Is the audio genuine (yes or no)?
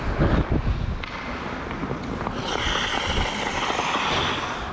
yes